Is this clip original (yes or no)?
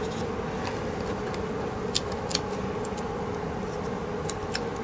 yes